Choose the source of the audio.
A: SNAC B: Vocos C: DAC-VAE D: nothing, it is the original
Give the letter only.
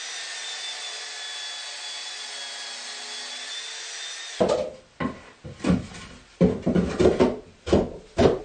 D